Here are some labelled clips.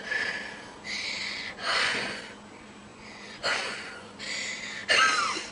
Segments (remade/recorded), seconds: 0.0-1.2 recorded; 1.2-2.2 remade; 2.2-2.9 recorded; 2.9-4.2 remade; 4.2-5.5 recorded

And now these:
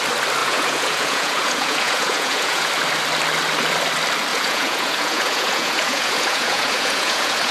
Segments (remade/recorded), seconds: 0.0-0.4 recorded; 0.4-2.7 remade; 2.7-4.3 recorded; 4.3-7.5 remade

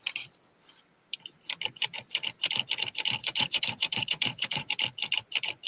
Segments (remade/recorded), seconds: 0.0-3.2 recorded; 3.2-4.7 remade; 4.7-5.7 recorded

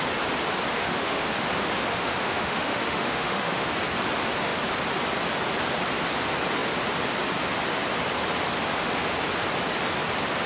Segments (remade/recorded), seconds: 0.0-0.7 recorded; 0.7-1.3 remade; 1.3-1.9 recorded; 1.9-3.7 remade; 3.7-10.5 recorded